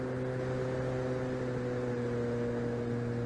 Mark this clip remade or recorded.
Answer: recorded